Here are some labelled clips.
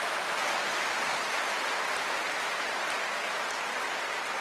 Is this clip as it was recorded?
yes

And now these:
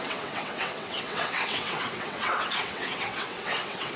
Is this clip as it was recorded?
no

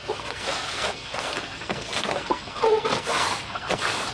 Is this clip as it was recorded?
no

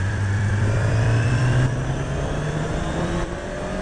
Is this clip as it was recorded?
no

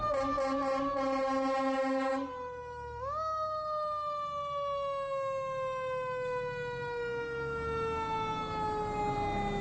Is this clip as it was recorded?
yes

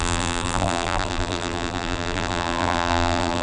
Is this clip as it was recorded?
no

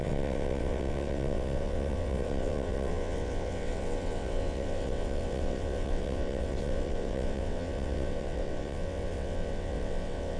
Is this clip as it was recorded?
no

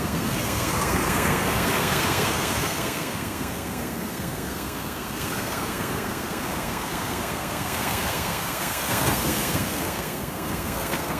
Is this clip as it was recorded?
no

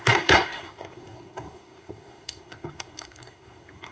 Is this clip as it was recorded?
no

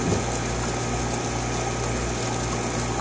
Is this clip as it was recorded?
yes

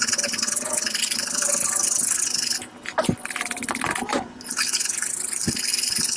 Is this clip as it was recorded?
yes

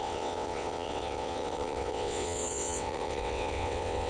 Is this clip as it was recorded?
no